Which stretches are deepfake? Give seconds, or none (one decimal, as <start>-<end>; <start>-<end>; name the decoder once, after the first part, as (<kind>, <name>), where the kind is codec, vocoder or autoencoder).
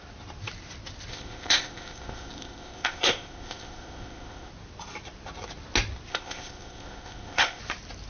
1.1-4.5 (codec, ZipCodec); 6.1-7.6